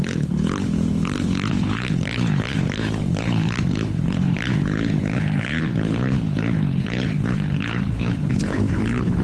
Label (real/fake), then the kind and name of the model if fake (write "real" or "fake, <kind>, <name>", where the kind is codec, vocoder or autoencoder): fake, codec, HILCodec